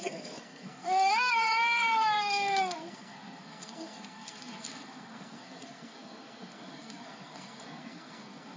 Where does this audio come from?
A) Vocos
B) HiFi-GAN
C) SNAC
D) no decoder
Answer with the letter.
C